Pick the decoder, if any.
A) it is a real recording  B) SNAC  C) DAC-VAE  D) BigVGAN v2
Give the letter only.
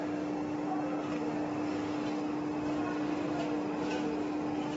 A